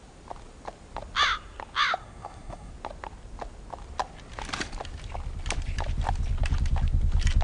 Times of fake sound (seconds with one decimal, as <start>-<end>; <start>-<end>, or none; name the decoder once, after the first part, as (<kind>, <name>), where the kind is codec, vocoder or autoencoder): 2.0-2.7 (codec, SNAC)